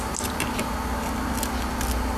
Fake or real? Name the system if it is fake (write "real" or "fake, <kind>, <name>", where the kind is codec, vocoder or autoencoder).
real